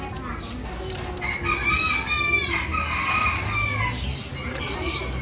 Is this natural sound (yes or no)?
yes